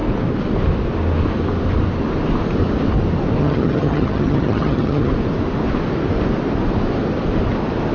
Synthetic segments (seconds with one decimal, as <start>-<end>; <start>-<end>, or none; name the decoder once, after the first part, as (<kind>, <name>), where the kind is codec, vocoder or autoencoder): 3.4-5.1 (vocoder, HiFi-GAN)